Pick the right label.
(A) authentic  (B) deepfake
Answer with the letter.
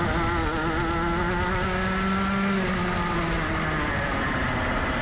A